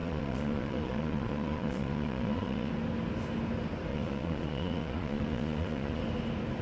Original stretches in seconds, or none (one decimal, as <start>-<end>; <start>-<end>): 2.7-3.9; 6.0-6.6